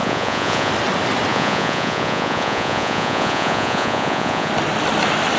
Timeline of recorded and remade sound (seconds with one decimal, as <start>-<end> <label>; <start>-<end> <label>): 0.0-0.7 remade; 0.7-1.3 recorded; 1.3-4.5 remade; 4.5-5.4 recorded